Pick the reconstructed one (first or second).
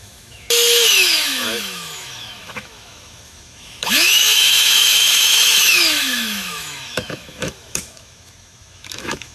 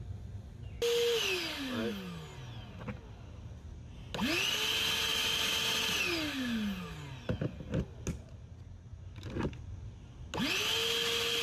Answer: first